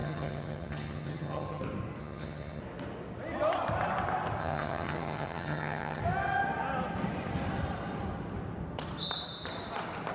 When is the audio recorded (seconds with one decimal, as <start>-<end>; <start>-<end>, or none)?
1.6-2.0; 2.6-4.4; 6.0-10.1